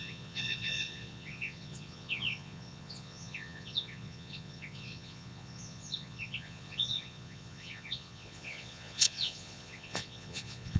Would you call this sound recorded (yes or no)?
no